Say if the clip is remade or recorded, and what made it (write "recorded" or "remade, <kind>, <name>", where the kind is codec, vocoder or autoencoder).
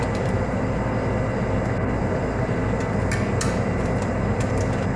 recorded